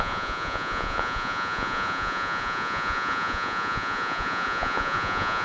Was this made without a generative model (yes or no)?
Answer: no